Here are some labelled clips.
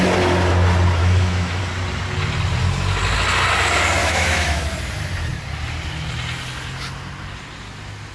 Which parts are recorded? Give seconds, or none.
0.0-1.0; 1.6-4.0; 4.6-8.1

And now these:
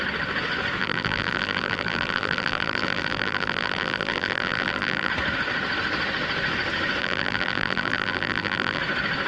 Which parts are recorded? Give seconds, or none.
0.0-0.8; 5.1-7.0; 8.8-9.3

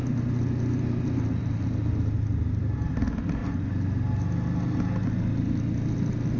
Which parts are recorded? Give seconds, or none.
0.0-6.4

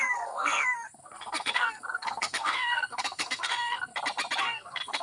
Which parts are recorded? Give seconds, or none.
3.9-4.4

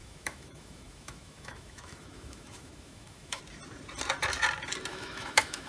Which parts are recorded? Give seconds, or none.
3.4-4.9

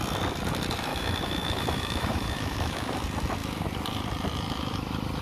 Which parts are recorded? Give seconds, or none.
0.0-0.9; 3.0-5.2

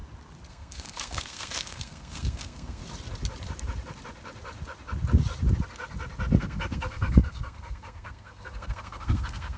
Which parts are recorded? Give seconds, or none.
0.0-0.5; 2.8-6.4

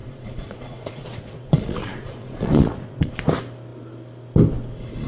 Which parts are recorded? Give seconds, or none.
3.1-5.1